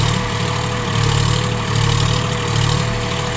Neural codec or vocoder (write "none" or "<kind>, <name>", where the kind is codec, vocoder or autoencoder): none